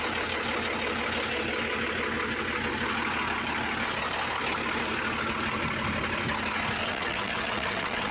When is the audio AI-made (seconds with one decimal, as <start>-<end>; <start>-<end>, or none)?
6.8-8.1